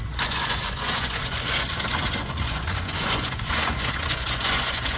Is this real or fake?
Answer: fake